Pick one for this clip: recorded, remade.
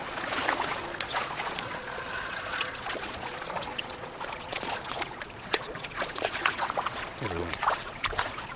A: remade